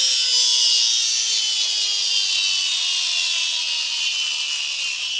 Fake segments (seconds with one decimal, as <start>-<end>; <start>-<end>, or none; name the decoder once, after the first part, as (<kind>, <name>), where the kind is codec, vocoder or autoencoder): none